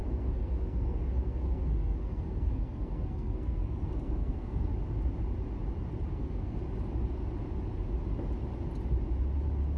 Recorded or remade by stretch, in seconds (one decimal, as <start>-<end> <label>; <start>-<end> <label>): 0.0-4.7 remade; 4.7-6.1 recorded; 6.1-6.6 remade; 6.6-9.8 recorded